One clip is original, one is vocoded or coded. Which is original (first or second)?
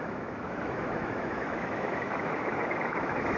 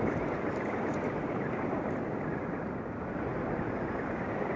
second